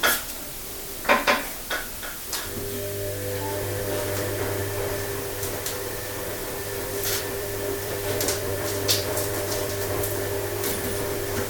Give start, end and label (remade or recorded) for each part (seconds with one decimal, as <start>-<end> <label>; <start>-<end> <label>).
0.0-6.4 recorded; 6.4-9.7 remade; 9.7-11.5 recorded